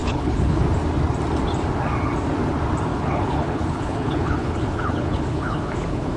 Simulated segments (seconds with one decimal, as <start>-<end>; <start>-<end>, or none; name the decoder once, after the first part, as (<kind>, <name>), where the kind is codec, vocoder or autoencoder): 0.0-0.6 (codec, HILCodec); 2.9-6.2